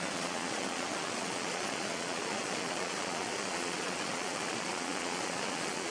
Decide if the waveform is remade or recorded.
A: remade